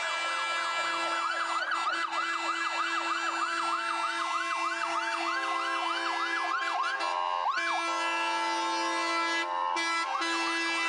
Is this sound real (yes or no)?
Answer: yes